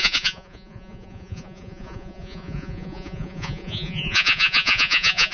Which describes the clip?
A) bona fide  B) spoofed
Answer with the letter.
B